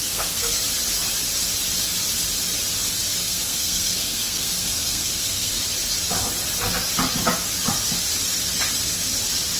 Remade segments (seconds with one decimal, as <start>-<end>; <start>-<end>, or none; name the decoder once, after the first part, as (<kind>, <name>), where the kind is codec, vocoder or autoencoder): 0.0-0.6 (codec, SNAC); 3.2-5.5

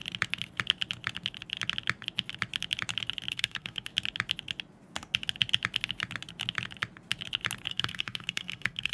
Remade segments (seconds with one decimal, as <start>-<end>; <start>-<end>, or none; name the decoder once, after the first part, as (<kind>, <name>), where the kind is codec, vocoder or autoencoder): 3.3-3.9 (codec, SNAC); 7.7-8.9